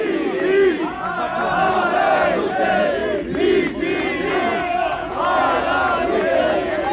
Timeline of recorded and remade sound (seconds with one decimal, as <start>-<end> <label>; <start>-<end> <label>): 0.0-1.3 remade; 1.3-2.0 recorded; 2.0-3.0 remade; 3.0-4.3 recorded; 4.3-6.9 remade